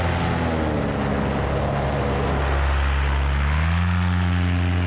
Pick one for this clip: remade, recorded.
recorded